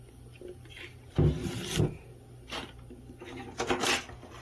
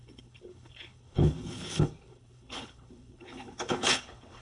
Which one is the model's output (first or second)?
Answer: second